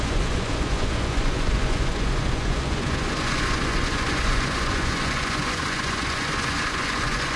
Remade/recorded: remade